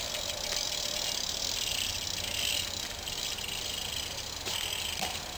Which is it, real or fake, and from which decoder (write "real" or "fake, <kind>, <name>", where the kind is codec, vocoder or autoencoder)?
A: real